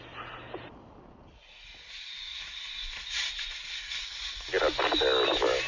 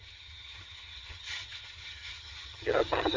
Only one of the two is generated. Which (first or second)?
second